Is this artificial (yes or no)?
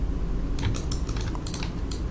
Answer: no